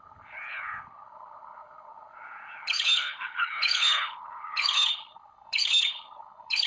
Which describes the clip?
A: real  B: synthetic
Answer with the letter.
B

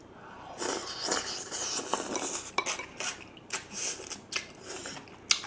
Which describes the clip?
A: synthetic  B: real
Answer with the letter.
B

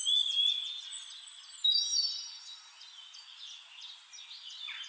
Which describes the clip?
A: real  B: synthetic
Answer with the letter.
A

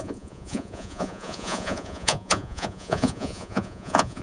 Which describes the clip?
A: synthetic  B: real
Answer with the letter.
A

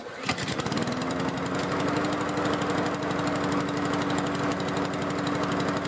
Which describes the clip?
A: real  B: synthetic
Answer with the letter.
A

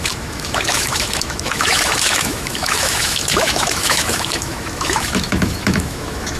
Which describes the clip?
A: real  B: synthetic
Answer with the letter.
B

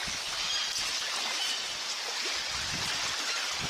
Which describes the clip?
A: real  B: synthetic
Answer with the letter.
A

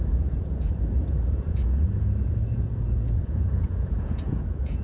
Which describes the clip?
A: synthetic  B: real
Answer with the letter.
A